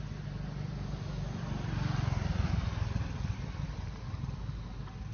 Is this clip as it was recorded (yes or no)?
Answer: yes